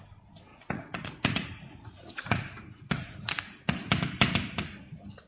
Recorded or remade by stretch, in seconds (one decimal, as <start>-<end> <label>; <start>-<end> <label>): 0.0-0.5 recorded; 0.5-3.7 remade; 3.7-5.3 recorded